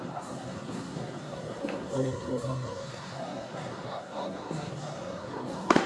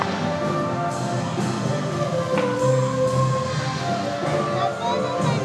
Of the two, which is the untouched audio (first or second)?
second